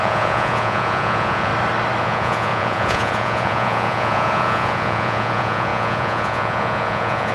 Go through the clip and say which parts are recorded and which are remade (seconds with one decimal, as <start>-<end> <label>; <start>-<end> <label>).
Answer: 0.0-1.5 remade; 1.5-2.0 recorded; 2.0-7.3 remade